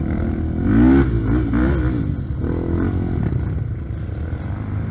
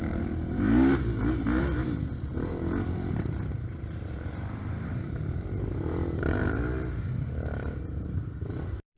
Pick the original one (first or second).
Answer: first